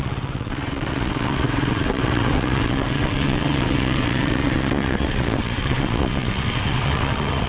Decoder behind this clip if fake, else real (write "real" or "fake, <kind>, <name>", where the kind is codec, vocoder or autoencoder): fake, vocoder, WaveNeXt